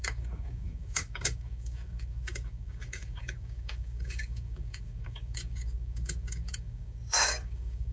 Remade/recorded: remade